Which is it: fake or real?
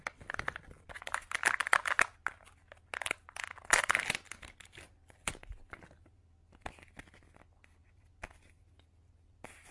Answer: real